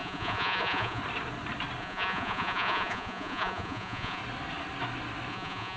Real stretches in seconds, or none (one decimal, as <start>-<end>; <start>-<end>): 1.0-1.8; 4.2-5.3

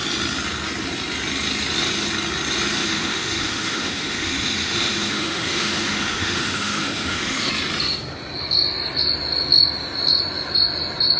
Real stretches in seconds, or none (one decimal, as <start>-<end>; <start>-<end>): 0.0-2.8; 7.5-11.2

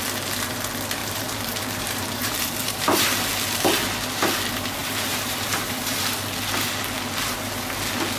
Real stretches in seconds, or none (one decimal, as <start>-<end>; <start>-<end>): 0.0-1.0; 3.3-4.8; 6.0-8.2

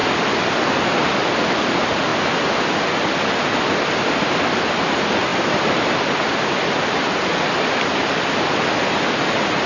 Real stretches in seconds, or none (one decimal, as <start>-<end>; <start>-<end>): 0.0-9.7

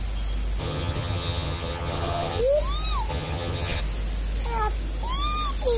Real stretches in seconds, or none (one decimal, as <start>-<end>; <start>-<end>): 0.0-0.6; 2.4-3.1; 3.8-5.8

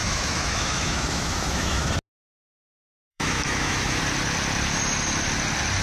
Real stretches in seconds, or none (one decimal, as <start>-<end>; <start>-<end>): 1.9-3.1; 4.0-5.8

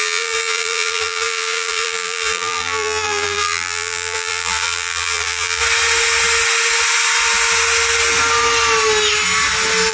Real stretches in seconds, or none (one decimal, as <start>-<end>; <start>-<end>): 5.6-9.9

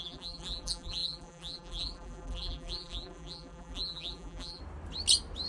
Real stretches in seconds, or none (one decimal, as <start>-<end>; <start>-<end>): 4.6-5.5